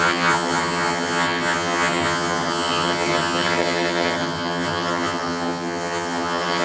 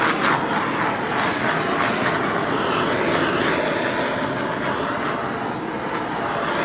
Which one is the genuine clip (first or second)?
second